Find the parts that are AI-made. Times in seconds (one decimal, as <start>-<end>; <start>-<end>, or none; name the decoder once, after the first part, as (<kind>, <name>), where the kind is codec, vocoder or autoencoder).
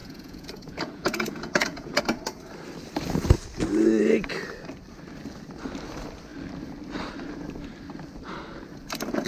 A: 0.0-2.0 (vocoder, Vocos)